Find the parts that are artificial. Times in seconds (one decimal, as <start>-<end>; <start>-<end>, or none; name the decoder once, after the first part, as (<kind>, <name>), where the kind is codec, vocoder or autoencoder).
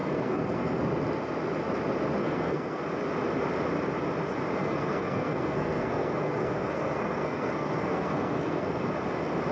0.0-0.8 (codec, SNAC); 2.2-2.8; 4.6-8.9